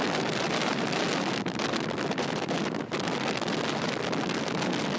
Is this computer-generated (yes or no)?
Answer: no